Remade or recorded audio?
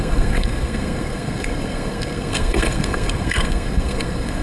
remade